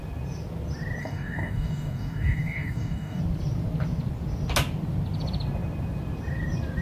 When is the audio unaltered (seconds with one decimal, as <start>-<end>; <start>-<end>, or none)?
0.0-1.0; 3.2-6.8

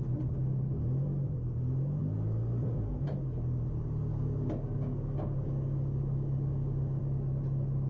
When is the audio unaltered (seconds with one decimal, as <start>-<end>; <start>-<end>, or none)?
0.0-4.1; 7.0-7.9